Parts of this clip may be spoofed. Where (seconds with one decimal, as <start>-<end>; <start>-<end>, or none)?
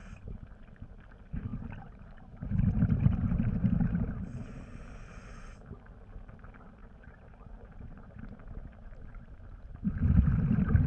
0.0-0.5; 1.5-5.0; 6.8-9.8